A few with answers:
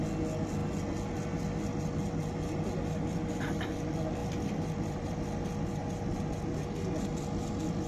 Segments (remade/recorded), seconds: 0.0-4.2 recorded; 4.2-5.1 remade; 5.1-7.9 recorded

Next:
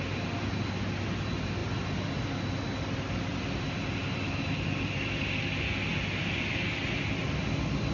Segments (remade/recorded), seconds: 0.0-7.9 recorded

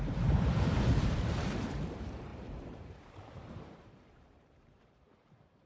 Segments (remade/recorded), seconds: 0.0-5.7 remade

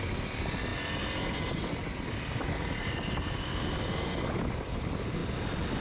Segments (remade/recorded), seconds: 0.0-5.8 recorded